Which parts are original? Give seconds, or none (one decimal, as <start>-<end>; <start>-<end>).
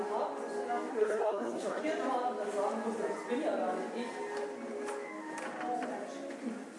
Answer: 0.0-0.9; 1.8-6.8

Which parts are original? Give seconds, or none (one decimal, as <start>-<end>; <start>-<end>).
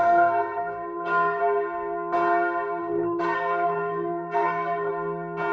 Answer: 1.4-2.8; 4.9-5.5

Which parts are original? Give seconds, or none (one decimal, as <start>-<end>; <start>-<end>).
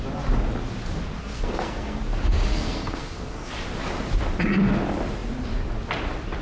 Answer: 0.0-1.2; 2.0-2.5; 3.5-6.4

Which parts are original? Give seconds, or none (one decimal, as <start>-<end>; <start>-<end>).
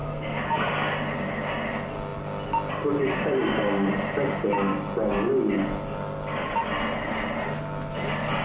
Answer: 0.7-8.4